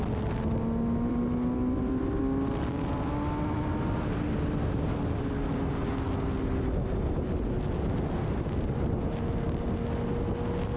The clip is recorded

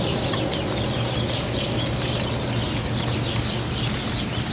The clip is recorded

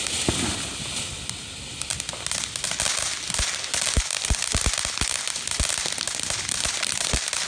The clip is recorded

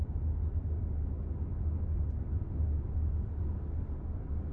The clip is recorded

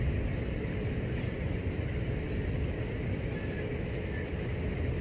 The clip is recorded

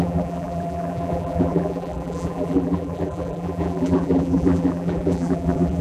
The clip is remade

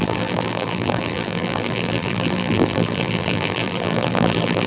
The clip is remade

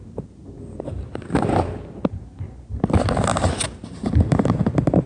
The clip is recorded